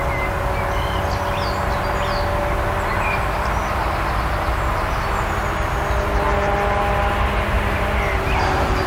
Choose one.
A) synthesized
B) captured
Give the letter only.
B